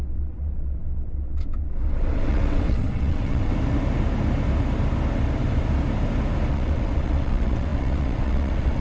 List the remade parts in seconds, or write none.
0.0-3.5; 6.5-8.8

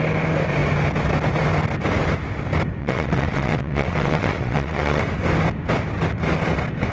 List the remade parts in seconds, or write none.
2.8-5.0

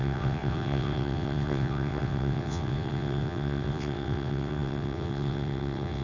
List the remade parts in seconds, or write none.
0.0-6.0